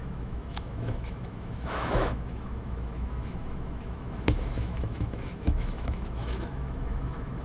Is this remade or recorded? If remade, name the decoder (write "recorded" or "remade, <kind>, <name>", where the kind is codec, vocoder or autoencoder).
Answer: remade, autoencoder, DAC-VAE